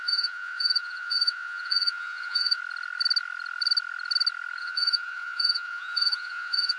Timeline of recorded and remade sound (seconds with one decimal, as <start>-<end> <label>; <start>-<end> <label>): 0.0-2.6 remade; 2.6-4.6 recorded; 4.6-6.8 remade